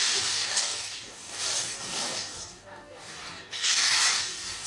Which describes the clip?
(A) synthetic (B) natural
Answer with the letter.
A